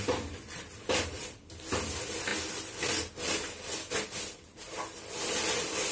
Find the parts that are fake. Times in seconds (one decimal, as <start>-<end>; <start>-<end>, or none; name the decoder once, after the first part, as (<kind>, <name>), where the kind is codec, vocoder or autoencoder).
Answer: none